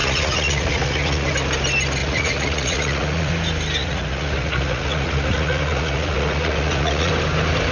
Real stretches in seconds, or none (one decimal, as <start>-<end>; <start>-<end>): 1.3-2.0; 3.3-3.8; 7.1-7.7